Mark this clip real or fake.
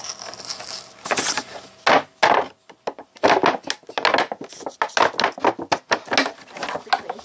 real